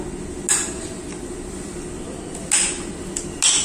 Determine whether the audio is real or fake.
real